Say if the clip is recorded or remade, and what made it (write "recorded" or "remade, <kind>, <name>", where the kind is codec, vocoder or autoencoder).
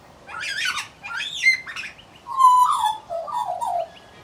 recorded